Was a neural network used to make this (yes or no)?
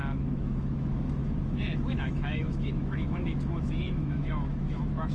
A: yes